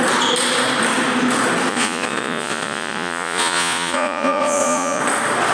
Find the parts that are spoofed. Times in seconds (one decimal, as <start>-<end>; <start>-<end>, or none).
1.7-5.0

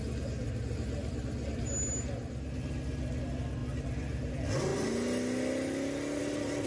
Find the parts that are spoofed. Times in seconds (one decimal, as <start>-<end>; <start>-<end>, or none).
none

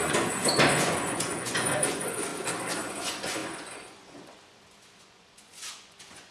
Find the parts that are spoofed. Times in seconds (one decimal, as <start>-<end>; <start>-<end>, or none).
0.0-2.3; 2.9-6.3

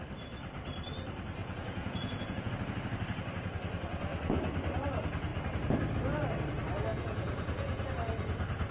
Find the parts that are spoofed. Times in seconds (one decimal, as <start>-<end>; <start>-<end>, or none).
1.4-2.5; 6.9-7.9